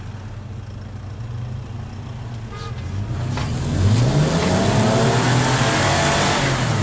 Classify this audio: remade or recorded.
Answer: recorded